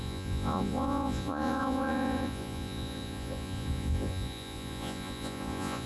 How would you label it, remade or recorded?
remade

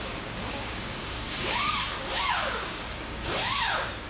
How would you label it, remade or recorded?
remade